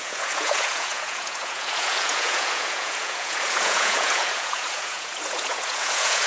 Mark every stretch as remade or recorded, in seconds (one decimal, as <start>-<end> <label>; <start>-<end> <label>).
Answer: 0.0-6.3 remade